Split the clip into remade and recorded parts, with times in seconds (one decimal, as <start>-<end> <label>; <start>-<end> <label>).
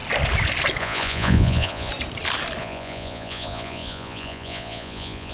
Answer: 0.0-0.8 recorded; 0.8-1.9 remade; 1.9-2.6 recorded; 2.6-5.3 remade